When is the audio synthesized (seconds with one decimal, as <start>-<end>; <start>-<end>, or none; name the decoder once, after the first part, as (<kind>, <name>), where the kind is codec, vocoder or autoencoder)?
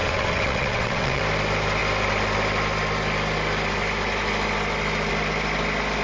0.0-1.2 (vocoder, WaveNeXt)